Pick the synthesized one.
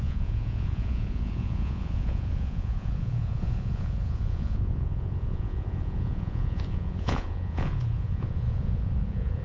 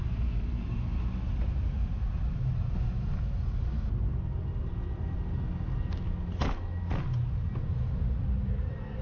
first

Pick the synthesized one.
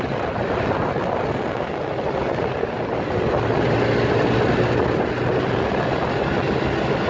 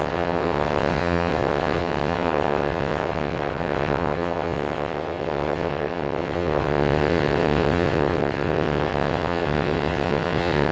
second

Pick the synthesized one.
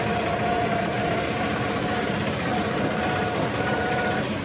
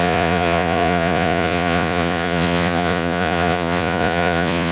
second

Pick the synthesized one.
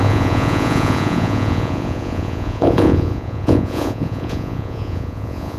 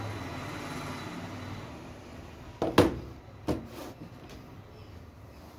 first